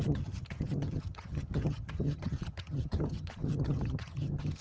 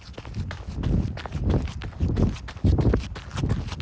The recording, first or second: second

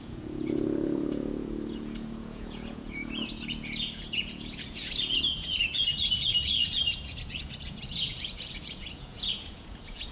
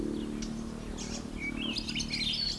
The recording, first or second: second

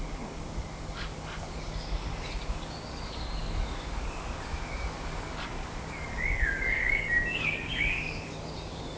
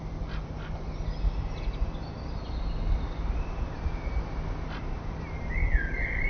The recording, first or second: second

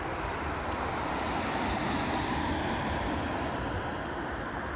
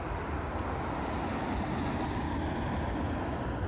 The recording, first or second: second